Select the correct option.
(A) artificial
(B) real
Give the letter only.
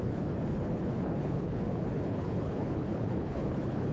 A